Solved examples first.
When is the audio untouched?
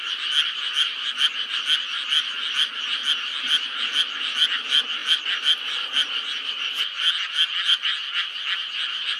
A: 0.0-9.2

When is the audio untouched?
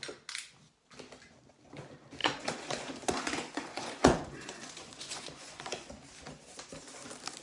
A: 0.0-2.2; 5.9-7.4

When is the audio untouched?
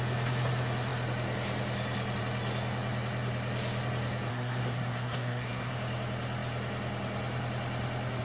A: 0.0-4.3; 5.7-8.2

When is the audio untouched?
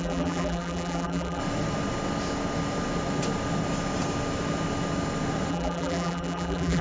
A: 1.4-5.5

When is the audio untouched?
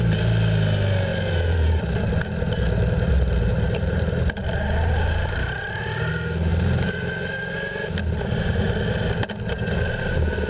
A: 0.0-1.1; 1.8-3.5; 6.1-6.5; 7.5-10.5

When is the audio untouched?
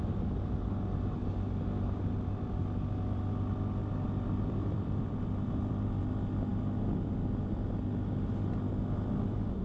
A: 0.0-3.8; 6.0-9.6